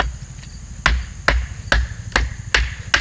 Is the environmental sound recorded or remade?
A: recorded